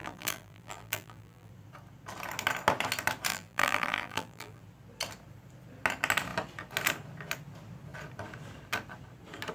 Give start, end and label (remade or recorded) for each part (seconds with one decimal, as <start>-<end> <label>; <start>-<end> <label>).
0.0-1.5 remade; 1.5-3.3 recorded; 3.3-4.6 remade; 4.6-9.5 recorded